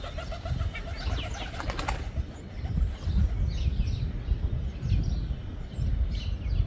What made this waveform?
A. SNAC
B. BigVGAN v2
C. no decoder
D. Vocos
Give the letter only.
C